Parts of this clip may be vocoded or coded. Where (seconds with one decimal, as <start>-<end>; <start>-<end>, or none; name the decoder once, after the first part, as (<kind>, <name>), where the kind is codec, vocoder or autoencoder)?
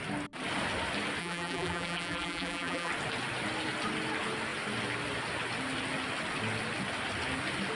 1.2-2.9 (vocoder, BigVGAN v2)